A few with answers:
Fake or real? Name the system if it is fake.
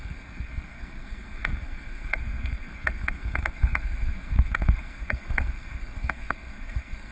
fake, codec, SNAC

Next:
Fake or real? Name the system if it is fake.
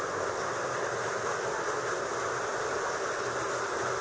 real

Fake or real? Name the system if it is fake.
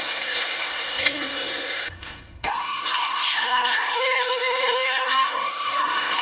fake, codec, SNAC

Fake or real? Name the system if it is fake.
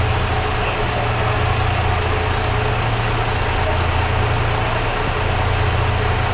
real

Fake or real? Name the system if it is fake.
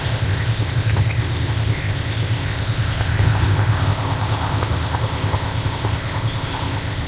fake, codec, ZipCodec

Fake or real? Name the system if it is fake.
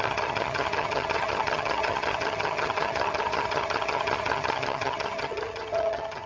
fake, vocoder, HiFi-GAN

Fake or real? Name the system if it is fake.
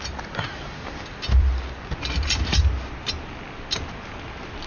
real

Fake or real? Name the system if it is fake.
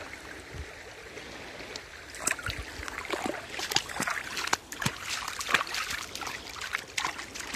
real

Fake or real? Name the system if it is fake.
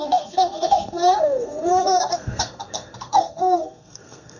fake, codec, SNAC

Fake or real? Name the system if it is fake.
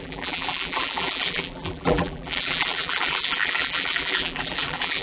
fake, vocoder, BigVGAN v2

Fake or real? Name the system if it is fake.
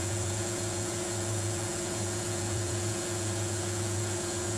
fake, vocoder, Vocos